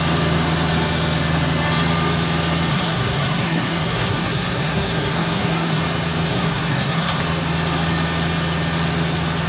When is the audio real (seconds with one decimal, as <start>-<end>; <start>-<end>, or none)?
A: 0.0-2.7; 5.8-6.3; 7.2-9.5